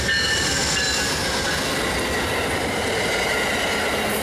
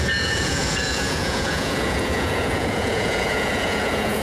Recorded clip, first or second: first